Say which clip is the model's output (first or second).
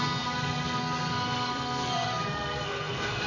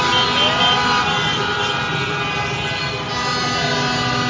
first